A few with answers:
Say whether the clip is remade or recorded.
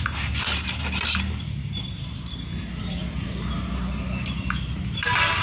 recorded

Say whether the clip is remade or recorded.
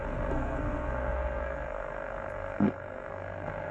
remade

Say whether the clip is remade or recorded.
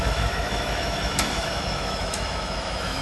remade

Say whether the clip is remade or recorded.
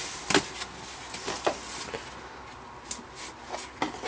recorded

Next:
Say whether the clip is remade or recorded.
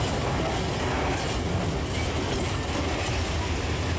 recorded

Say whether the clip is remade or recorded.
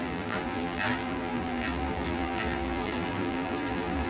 remade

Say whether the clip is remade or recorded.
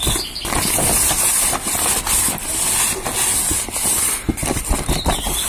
recorded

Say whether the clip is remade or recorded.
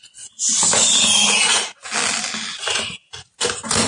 recorded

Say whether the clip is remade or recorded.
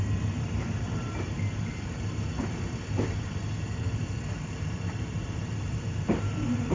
remade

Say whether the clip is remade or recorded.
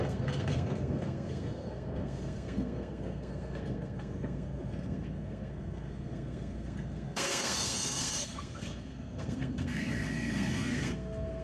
remade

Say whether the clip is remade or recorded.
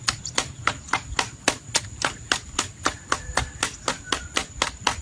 recorded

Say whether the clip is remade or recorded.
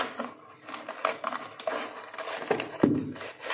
recorded